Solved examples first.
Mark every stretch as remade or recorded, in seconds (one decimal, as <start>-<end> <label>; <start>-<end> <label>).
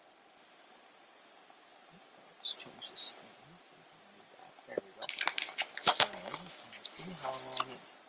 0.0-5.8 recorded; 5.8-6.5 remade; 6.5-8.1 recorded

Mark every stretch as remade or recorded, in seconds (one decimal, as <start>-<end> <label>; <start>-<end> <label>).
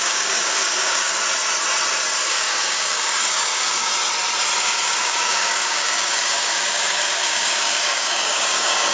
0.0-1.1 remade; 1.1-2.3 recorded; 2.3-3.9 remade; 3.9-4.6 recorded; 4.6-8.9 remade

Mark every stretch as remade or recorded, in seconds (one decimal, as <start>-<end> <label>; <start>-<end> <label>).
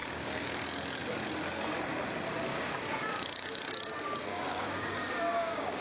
0.0-0.5 remade; 0.5-2.5 recorded; 2.5-3.6 remade; 3.6-4.3 recorded; 4.3-5.8 remade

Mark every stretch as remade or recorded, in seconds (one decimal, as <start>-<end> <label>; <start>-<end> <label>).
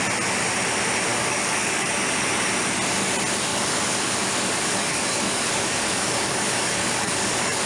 0.0-1.1 recorded; 1.1-1.9 remade; 1.9-3.5 recorded; 3.5-7.7 remade